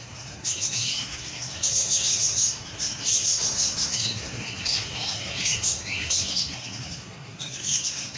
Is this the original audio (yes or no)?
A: no